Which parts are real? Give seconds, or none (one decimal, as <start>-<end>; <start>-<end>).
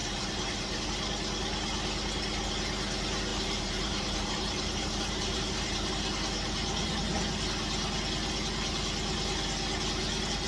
0.8-3.3; 5.9-10.5